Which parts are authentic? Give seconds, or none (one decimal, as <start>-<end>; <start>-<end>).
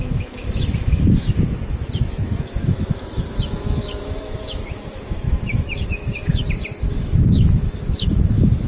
6.4-6.9